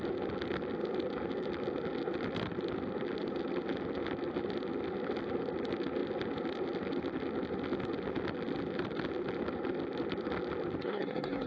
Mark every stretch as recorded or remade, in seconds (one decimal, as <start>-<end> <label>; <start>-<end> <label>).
0.0-10.8 recorded; 10.8-11.5 remade